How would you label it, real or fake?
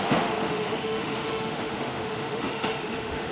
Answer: fake